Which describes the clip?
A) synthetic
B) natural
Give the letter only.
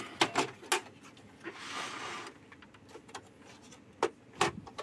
B